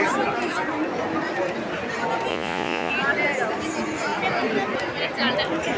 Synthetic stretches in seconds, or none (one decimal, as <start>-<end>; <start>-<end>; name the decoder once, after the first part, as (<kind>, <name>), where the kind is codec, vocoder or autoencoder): 2.3-2.9 (vocoder, Vocos)